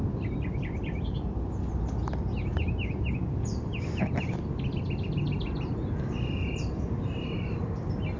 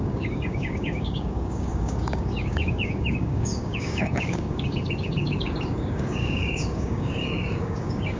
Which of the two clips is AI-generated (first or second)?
second